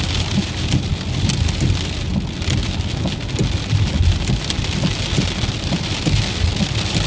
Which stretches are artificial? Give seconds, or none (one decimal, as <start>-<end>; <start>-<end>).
none